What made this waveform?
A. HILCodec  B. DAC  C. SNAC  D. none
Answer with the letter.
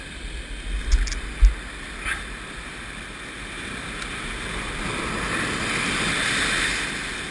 D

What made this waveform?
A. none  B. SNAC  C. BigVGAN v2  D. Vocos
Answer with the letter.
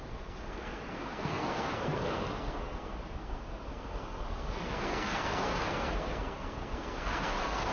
B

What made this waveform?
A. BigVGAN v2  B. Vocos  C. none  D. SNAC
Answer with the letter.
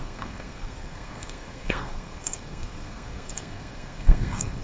D